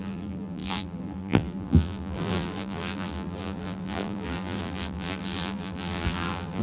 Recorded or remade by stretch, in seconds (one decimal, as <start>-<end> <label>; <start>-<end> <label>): 0.0-6.6 remade